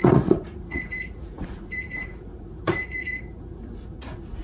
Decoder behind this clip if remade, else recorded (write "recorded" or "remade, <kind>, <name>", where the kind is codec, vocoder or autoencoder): remade, vocoder, Vocos